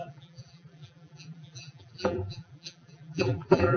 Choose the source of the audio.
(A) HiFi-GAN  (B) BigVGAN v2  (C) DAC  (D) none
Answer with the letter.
B